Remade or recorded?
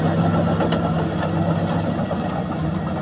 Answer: recorded